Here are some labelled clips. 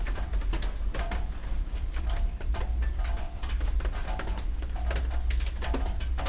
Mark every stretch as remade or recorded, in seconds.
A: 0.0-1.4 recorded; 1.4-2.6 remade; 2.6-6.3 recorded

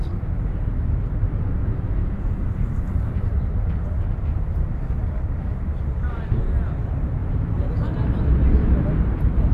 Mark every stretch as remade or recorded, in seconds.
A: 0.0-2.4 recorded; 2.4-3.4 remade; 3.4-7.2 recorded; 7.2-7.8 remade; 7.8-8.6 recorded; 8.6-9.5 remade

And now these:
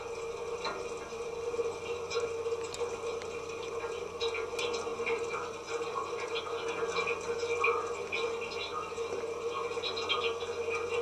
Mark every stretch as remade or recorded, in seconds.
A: 0.0-4.9 recorded; 4.9-6.4 remade; 6.4-11.0 recorded

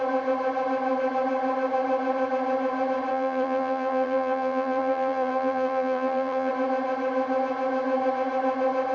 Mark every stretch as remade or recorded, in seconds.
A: 0.0-3.1 recorded; 3.1-6.5 remade; 6.5-8.9 recorded

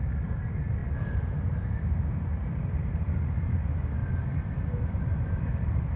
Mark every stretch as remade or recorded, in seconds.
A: 0.0-6.0 remade